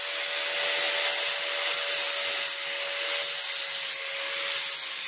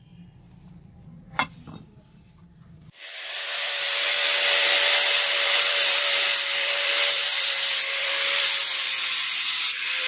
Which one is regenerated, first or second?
second